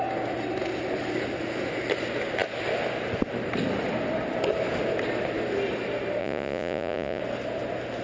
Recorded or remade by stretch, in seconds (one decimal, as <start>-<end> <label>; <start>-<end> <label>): 0.0-6.2 recorded; 6.2-7.2 remade; 7.2-8.0 recorded